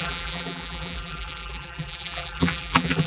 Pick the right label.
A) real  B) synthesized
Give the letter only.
B